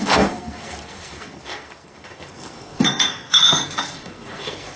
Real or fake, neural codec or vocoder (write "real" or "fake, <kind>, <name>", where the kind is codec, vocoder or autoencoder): fake, codec, SNAC